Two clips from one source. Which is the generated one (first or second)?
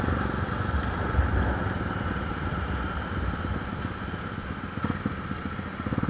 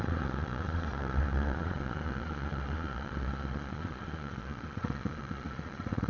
second